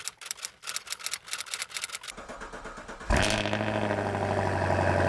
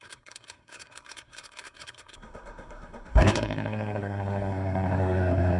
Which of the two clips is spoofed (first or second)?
second